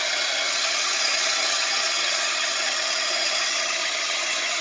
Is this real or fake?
fake